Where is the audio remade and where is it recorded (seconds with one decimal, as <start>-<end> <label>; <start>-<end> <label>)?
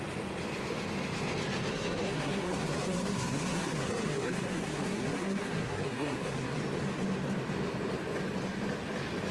0.0-1.7 recorded; 1.7-6.6 remade; 6.6-9.3 recorded